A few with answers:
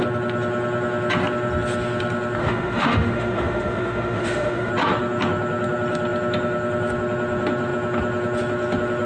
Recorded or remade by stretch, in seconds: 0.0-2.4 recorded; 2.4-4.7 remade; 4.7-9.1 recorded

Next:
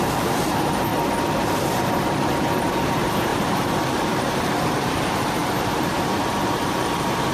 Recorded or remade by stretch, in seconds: 0.0-0.9 remade; 0.9-1.4 recorded; 1.4-7.3 remade

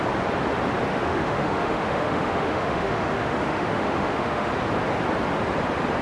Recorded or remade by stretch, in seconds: 0.0-0.9 recorded; 0.9-4.5 remade; 4.5-6.0 recorded